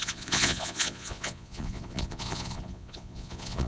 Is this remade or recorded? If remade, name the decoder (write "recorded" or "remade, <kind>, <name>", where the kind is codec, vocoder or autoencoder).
remade, vocoder, Vocos